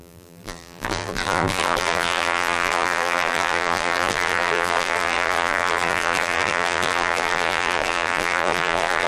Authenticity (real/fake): fake